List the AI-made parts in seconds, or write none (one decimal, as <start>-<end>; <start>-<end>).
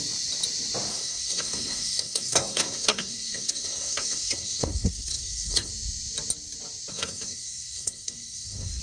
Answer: 0.9-5.7; 6.9-8.8